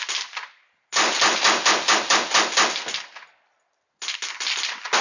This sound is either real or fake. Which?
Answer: real